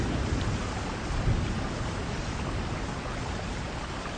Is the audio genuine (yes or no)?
yes